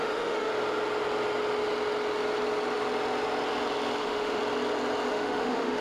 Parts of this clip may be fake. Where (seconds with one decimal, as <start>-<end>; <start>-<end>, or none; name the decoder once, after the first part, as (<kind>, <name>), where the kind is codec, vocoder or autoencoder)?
0.0-0.5 (autoencoder, DAC-VAE); 4.0-4.4; 5.1-5.8